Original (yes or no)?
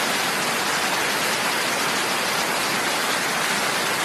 yes